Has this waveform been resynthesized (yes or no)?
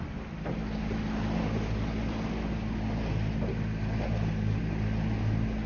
no